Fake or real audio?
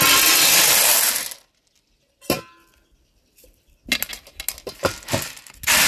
real